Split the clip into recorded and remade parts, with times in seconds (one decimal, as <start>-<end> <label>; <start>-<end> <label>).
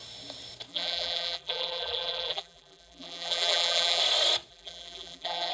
0.0-0.7 recorded; 0.7-4.0 remade; 4.0-4.5 recorded; 4.5-5.5 remade